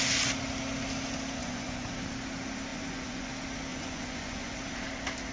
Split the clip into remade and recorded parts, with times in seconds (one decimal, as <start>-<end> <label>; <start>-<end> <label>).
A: 0.0-1.4 recorded; 1.4-1.9 remade; 1.9-2.7 recorded; 2.7-3.3 remade; 3.3-3.7 recorded; 3.7-4.6 remade; 4.6-5.3 recorded